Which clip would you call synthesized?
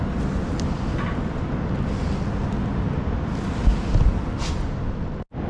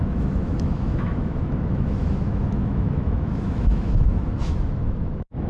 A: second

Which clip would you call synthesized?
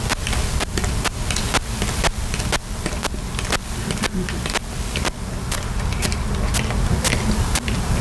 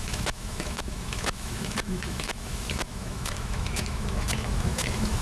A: second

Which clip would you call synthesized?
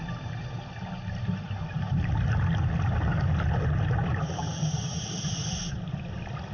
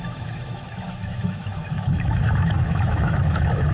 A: second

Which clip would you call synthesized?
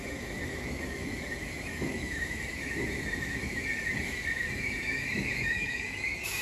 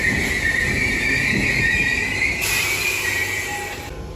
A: first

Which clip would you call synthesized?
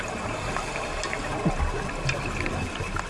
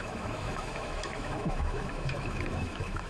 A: second